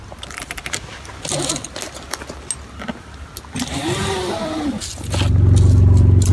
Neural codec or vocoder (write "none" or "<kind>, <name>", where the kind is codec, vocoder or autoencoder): none